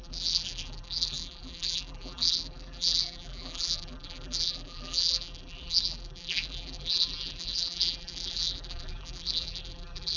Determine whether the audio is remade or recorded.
remade